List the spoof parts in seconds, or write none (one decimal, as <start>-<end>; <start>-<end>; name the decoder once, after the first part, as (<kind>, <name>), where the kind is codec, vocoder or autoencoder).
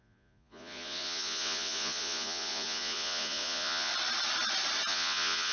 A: 0.0-3.9 (vocoder, Vocos); 4.9-5.5